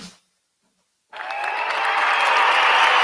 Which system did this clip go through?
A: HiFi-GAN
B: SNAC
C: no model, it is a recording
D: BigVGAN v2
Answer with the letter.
C